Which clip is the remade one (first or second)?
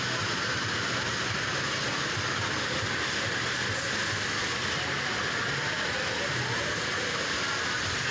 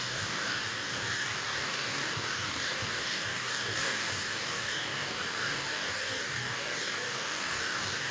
second